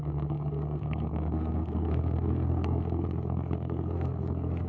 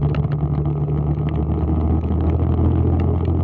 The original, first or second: second